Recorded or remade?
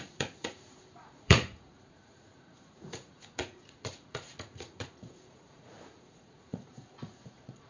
remade